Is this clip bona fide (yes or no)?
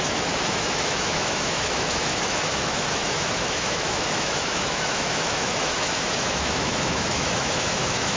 no